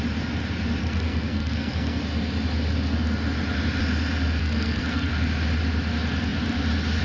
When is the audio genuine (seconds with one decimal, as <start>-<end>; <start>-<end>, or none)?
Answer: 0.0-0.8; 2.0-4.4; 5.1-7.0

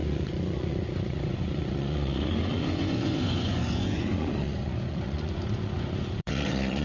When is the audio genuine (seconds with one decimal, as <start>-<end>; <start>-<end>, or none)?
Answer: none

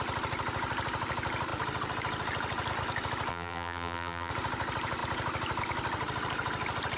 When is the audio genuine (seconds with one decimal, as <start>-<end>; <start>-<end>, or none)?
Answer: 0.0-3.3; 4.3-7.0

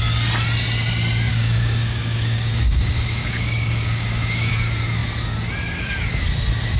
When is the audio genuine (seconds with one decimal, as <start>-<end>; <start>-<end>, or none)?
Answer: 0.0-1.3; 4.5-6.8

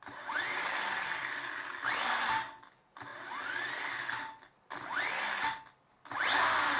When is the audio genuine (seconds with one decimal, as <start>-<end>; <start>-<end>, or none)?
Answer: 0.0-6.8

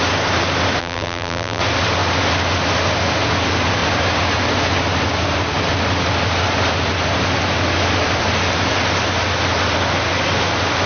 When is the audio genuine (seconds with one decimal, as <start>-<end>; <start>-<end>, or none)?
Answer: 0.0-0.8; 1.6-10.9

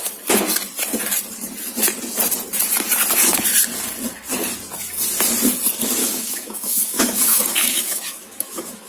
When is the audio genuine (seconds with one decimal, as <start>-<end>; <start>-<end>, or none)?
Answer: 0.0-6.0